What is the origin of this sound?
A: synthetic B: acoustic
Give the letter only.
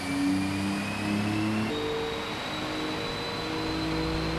B